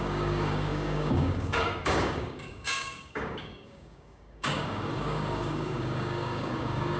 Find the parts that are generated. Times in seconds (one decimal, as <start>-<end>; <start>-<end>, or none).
0.0-7.0